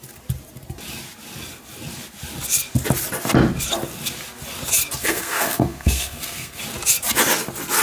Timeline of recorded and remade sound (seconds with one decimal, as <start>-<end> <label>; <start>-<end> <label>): 0.0-5.0 recorded; 5.0-6.6 remade; 6.6-7.8 recorded